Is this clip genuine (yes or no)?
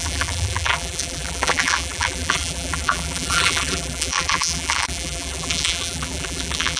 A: no